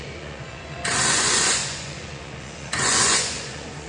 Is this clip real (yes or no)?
no